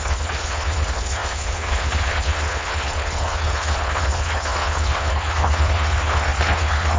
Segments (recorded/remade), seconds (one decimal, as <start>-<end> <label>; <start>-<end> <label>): 0.0-7.0 remade